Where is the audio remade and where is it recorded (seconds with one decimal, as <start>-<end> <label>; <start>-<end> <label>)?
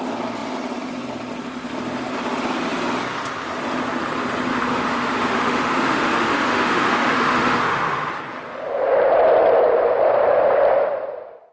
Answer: 0.0-4.5 recorded; 4.5-8.1 remade; 8.1-11.5 recorded